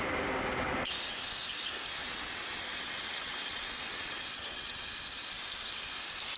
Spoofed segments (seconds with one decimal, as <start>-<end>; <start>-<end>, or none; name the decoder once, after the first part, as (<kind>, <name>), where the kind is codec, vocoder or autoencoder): 2.0-4.9 (vocoder, WaveNeXt)